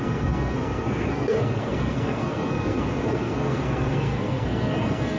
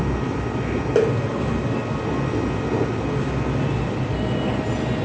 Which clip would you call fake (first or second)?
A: first